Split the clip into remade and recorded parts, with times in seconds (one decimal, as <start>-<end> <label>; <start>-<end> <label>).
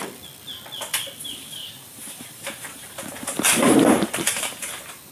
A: 0.0-1.6 recorded; 1.6-5.1 remade